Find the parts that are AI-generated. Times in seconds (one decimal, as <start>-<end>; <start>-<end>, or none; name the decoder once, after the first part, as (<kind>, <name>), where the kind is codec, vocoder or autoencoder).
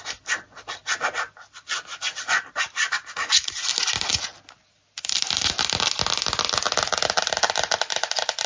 none